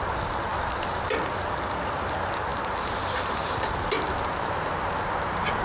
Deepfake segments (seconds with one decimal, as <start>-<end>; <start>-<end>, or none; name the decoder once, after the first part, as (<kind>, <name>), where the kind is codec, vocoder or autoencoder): 2.5-3.7 (vocoder, BigVGAN v2)